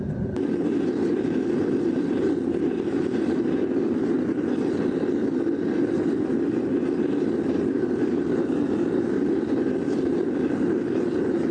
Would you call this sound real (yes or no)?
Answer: yes